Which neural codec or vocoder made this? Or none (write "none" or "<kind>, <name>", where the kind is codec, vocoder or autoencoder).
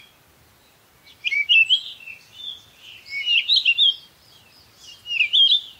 none